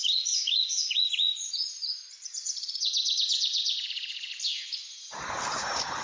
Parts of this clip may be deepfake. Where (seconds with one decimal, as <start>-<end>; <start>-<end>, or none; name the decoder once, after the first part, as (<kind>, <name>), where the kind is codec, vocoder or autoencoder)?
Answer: 0.0-4.3 (vocoder, Vocos); 5.5-6.0